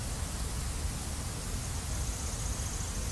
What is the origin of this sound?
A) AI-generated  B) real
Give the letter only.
B